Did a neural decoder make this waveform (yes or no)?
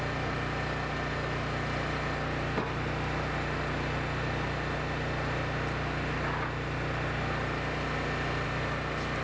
no